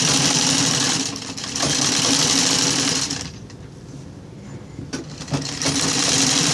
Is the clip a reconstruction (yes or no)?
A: no